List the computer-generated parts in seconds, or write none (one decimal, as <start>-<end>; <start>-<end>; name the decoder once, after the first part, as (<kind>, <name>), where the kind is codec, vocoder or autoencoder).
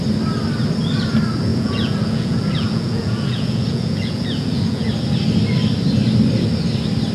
1.5-4.9 (vocoder, Vocos)